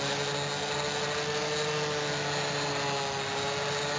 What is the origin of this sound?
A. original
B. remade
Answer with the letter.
A